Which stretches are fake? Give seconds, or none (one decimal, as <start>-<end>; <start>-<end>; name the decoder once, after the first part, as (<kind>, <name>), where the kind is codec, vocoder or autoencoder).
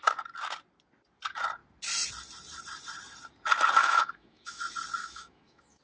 3.8-4.6 (autoencoder, DAC-VAE); 5.0-5.8